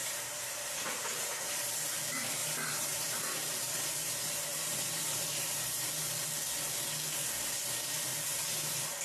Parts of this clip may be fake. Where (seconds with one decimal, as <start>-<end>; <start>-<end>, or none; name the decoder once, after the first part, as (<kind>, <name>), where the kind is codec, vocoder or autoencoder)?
0.0-1.6 (vocoder, BigVGAN v2); 2.4-3.2; 4.5-5.9; 8.1-9.0